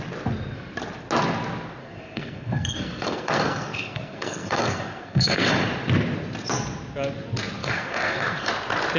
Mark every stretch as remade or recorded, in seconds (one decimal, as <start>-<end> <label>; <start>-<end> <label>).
0.0-1.8 recorded; 1.8-5.5 remade; 5.5-7.6 recorded; 7.6-8.5 remade; 8.5-9.0 recorded